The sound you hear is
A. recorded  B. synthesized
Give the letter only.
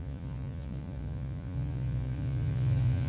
B